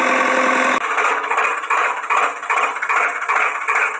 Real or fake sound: real